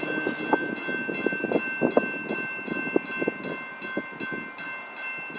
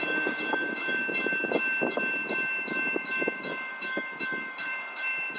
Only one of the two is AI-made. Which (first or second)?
second